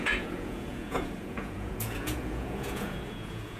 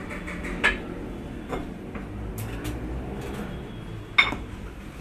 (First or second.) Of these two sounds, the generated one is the first